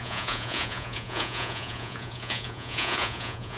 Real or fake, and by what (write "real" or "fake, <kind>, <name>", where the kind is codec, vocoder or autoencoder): fake, vocoder, Vocos